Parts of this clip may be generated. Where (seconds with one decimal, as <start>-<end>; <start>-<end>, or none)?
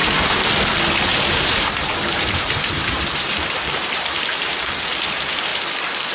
0.0-0.5; 1.1-4.8